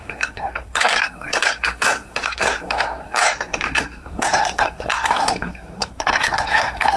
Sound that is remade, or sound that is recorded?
remade